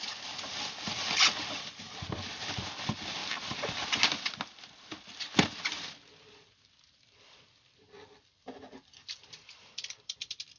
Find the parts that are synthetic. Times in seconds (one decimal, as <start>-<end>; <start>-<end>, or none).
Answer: none